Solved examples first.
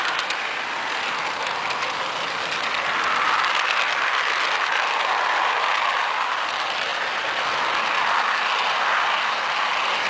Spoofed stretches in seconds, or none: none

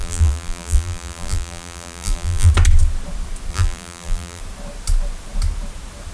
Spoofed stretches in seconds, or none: 0.0-2.5; 3.5-4.4

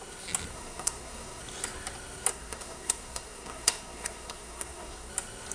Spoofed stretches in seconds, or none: 0.5-1.4; 2.3-5.1

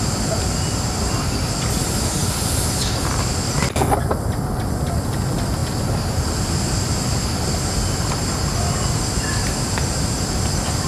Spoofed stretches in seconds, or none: none

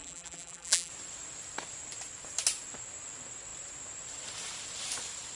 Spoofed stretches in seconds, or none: 0.0-0.9

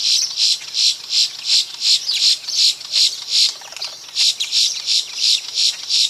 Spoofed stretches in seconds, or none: 0.0-1.0; 4.6-6.1

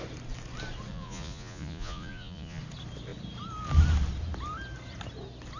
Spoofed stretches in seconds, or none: 0.9-2.6

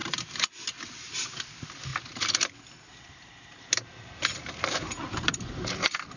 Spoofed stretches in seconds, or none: 1.5-6.2